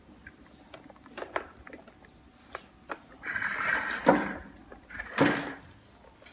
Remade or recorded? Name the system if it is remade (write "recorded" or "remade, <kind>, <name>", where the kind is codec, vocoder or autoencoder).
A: recorded